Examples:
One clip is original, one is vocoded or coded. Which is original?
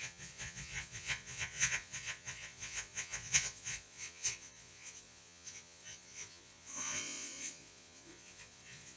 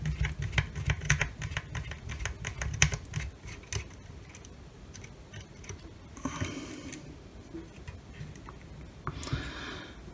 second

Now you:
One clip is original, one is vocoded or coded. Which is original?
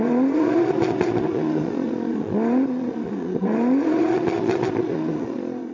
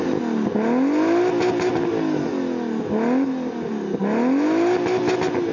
second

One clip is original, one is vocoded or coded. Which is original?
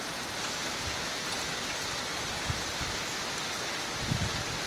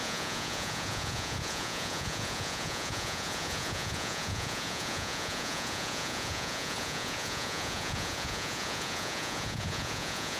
first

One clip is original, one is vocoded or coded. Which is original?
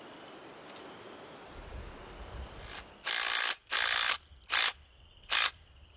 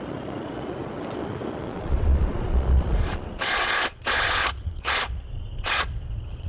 first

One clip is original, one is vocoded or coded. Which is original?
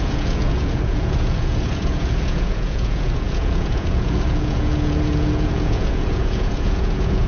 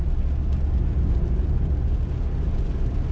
second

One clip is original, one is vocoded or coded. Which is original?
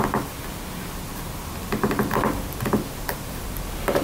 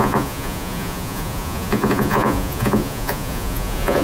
first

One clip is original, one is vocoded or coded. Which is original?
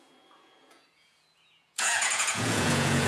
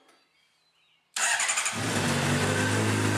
second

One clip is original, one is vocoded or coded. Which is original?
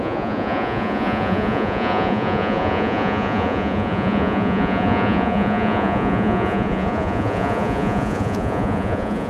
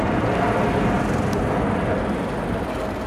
second